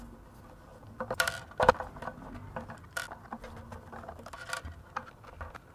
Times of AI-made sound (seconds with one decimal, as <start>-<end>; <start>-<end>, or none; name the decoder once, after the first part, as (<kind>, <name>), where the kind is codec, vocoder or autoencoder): none